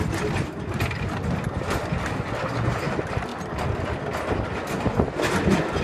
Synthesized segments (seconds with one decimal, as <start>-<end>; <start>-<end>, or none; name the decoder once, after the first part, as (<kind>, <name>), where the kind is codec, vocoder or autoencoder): none